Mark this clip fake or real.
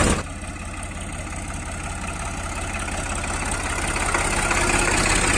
real